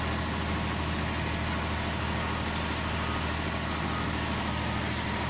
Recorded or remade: recorded